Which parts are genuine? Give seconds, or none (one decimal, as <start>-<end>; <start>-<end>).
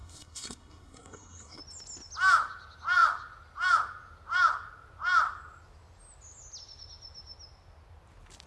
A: 1.6-8.5